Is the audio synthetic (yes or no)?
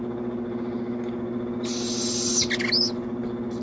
no